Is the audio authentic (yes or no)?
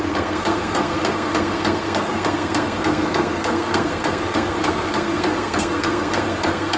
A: no